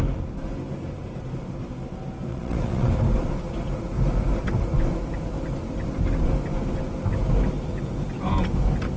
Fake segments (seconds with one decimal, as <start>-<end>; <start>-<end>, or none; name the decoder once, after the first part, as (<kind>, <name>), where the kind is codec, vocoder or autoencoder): 2.3-2.9 (vocoder, WaveNeXt)